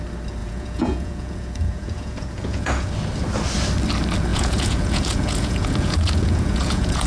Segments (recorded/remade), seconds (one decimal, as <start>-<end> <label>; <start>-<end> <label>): 0.0-0.4 recorded; 0.4-2.9 remade; 2.9-4.3 recorded; 4.3-7.1 remade